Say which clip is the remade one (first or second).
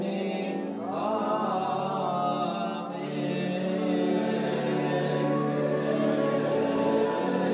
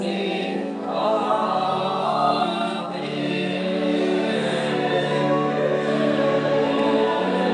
second